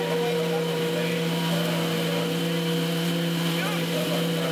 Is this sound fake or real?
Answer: real